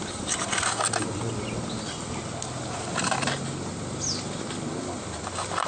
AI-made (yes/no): no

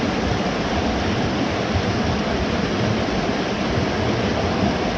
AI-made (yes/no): no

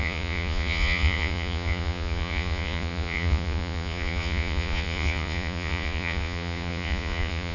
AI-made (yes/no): yes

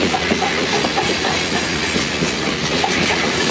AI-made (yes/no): yes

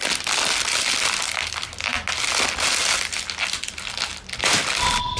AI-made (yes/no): no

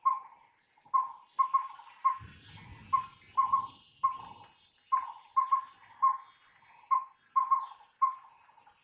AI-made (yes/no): no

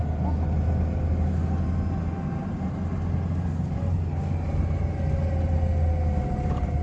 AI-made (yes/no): no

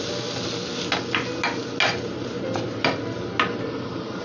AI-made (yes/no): no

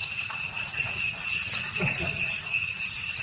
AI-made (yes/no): yes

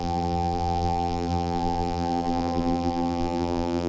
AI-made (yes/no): yes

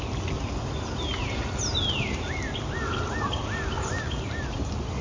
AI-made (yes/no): no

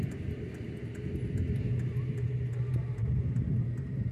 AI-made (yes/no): yes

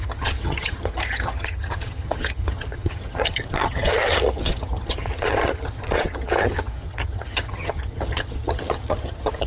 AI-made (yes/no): yes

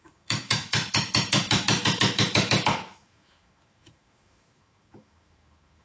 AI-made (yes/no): yes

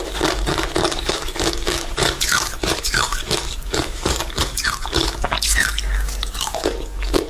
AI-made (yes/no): yes